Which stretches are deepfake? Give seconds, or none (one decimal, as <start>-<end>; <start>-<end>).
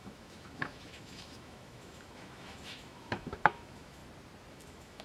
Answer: 0.0-4.0; 4.5-5.0